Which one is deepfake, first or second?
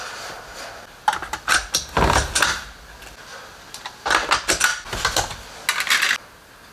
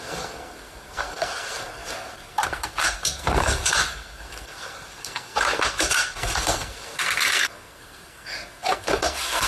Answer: second